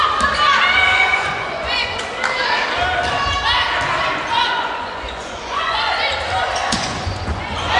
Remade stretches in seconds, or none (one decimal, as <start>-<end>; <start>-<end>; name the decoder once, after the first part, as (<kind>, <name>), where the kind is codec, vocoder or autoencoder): 0.9-2.0 (vocoder, Vocos); 4.3-5.8; 6.6-7.8